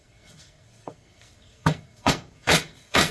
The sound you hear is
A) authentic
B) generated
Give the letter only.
B